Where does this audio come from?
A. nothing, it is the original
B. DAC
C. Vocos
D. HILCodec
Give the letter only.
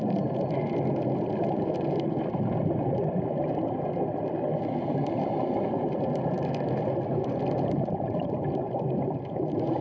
A